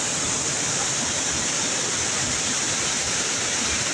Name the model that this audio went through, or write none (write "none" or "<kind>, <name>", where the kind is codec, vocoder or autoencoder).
none